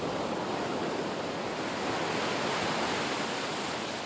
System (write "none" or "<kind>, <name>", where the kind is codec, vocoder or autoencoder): none